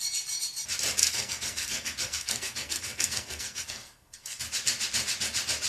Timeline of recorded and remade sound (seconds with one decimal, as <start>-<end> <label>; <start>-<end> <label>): 0.0-1.0 recorded; 1.0-4.4 remade; 4.4-5.7 recorded